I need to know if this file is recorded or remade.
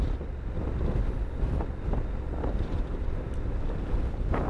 recorded